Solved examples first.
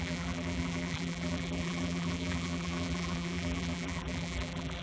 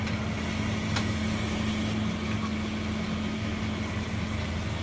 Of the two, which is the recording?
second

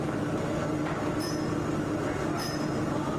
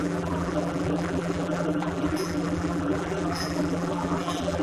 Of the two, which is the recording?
first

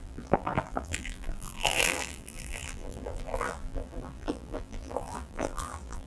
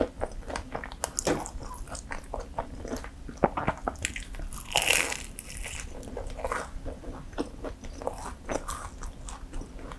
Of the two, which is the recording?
second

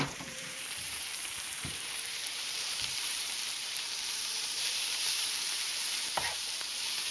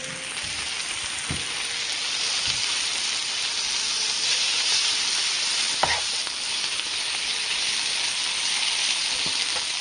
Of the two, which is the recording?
second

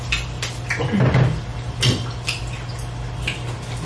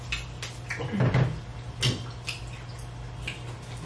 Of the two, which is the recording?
second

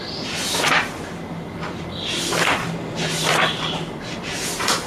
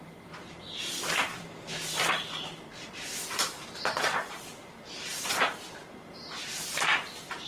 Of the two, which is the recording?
first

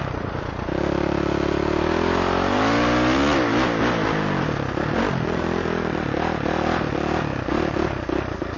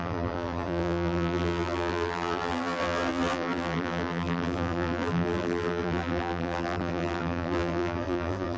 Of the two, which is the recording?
first